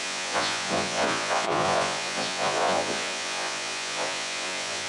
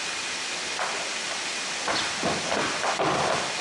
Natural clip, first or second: second